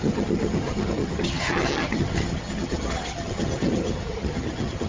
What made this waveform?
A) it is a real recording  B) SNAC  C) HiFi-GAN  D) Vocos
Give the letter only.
C